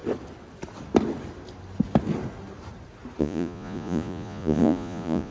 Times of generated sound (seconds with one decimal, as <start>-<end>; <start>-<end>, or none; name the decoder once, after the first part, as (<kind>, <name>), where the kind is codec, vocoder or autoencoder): 3.2-5.3 (vocoder, Vocos)